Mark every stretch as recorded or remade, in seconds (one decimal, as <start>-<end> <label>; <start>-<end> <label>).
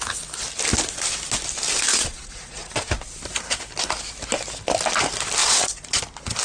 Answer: 0.0-1.9 recorded; 1.9-2.9 remade; 2.9-5.4 recorded; 5.4-6.0 remade; 6.0-6.4 recorded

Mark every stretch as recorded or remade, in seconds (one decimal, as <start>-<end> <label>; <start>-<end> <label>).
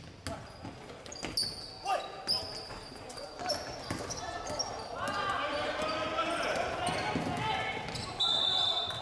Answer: 0.0-9.0 recorded